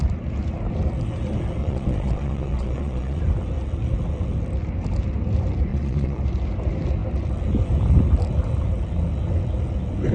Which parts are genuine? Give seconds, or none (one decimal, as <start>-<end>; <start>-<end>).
0.0-1.6; 3.2-5.7; 6.2-10.1